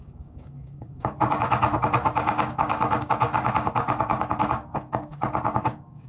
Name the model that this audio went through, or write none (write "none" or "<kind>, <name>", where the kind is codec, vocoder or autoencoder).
codec, DAC